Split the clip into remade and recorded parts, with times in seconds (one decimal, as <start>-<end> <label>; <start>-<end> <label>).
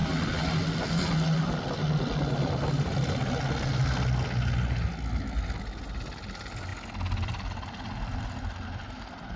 0.0-9.4 recorded